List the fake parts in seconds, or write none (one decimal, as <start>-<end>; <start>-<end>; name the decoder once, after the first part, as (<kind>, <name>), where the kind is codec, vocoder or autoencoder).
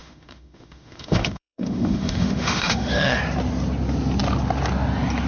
0.0-3.2 (autoencoder, DAC-VAE)